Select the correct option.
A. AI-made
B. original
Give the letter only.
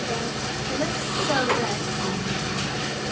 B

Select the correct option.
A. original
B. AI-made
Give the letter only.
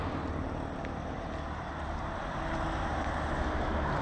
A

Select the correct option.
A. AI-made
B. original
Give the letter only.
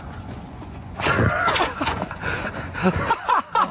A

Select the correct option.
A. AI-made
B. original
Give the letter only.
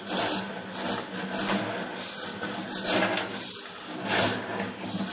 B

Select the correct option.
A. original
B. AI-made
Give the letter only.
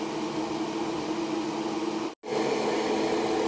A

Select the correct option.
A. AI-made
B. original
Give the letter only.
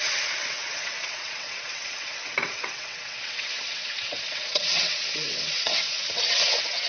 A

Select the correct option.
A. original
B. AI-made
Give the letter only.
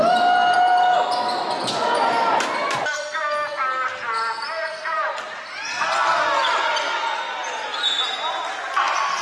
A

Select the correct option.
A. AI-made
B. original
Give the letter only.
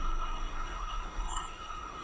A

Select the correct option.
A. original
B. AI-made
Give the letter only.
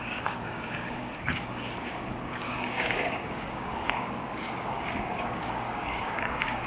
B